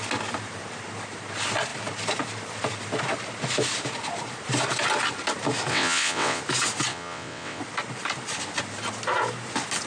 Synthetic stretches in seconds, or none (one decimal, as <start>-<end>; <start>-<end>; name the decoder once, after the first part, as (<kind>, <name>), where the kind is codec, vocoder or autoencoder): 5.7-6.4 (vocoder, WaveNeXt); 6.9-7.6